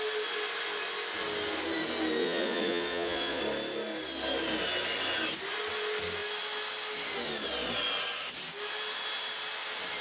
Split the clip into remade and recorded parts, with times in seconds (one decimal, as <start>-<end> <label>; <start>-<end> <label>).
0.0-2.2 recorded; 2.2-3.4 remade; 3.4-10.0 recorded